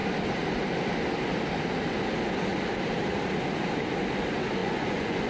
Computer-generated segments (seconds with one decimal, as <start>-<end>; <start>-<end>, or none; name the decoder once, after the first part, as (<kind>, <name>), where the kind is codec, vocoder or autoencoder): 4.6-5.3 (vocoder, Vocos)